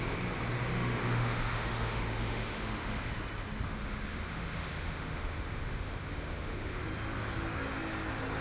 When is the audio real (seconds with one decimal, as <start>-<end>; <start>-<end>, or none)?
0.0-0.7; 3.1-3.8; 6.8-8.4

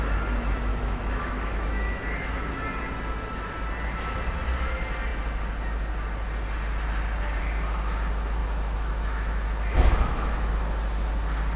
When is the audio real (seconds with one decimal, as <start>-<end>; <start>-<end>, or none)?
0.0-0.7; 2.5-8.4; 10.5-11.6

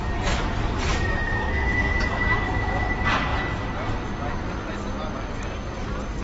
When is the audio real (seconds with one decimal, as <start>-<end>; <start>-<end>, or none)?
0.0-0.9; 2.1-6.2

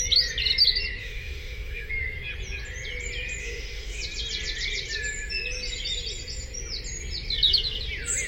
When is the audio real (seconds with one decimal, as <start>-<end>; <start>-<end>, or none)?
0.0-1.0; 1.9-3.4; 4.0-8.3

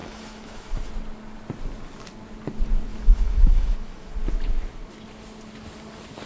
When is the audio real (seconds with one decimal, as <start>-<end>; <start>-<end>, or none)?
0.9-2.9; 4.1-6.3